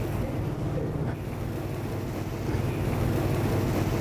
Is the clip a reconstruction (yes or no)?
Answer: no